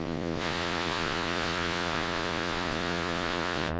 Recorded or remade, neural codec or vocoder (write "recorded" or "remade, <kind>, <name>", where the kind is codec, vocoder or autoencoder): remade, vocoder, Vocos